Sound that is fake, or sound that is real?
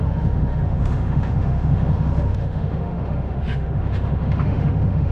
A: fake